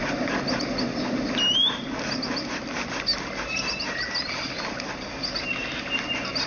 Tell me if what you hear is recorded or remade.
recorded